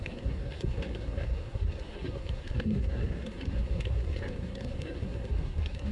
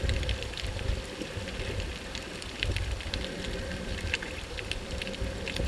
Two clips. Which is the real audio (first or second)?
second